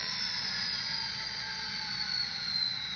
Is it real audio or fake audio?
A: fake